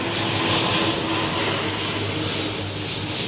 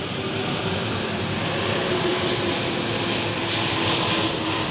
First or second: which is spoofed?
second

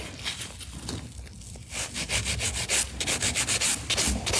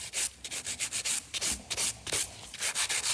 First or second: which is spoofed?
second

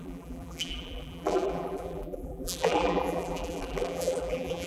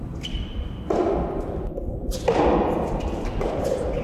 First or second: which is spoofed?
first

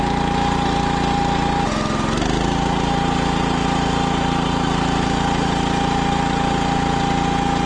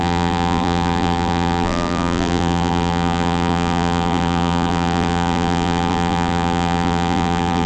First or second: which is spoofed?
second